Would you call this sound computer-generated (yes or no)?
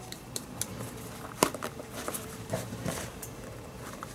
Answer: yes